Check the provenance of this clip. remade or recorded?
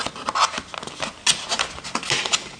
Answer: recorded